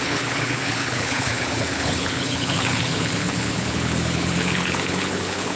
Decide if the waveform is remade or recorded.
remade